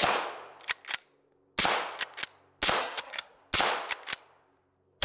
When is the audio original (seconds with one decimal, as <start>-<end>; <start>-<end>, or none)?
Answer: 0.0-2.8; 3.4-5.0